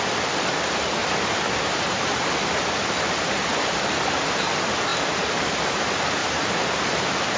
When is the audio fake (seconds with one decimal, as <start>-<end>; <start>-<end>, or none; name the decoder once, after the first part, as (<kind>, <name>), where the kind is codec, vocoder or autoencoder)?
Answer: 1.0-3.8 (vocoder, BigVGAN v2); 6.2-6.8